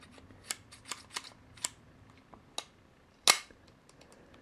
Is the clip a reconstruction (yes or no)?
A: no